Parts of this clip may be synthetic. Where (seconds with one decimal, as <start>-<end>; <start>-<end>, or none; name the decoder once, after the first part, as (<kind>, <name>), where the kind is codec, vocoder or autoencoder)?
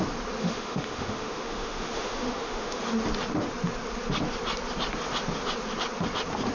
0.4-2.8 (autoencoder, DAC-VAE)